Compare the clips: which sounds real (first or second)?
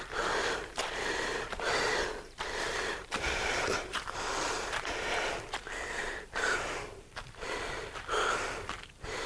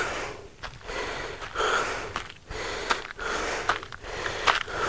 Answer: second